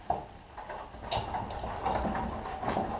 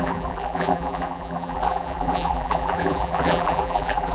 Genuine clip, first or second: first